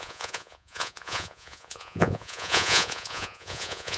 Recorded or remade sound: remade